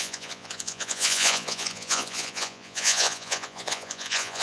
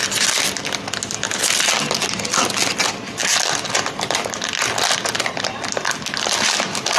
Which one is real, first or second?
second